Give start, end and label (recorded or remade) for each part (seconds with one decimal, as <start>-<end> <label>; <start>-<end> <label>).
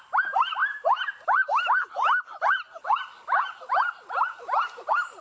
0.0-5.2 recorded